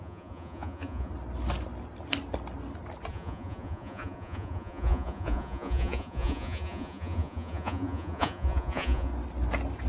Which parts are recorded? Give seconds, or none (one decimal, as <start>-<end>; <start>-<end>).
1.1-3.1; 9.1-9.9